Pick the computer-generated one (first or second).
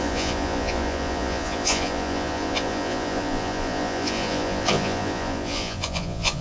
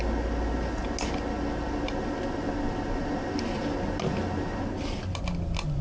first